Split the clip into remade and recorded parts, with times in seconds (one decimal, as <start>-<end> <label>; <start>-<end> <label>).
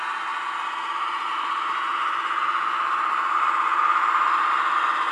0.0-5.1 recorded